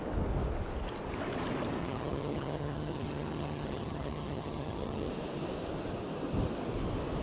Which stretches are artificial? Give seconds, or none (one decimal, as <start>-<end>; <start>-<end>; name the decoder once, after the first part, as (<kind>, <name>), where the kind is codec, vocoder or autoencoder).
1.8-5.1 (vocoder, HiFi-GAN)